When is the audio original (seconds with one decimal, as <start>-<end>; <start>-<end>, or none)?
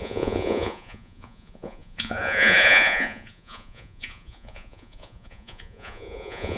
none